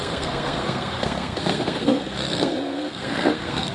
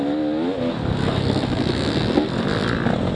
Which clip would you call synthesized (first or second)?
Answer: first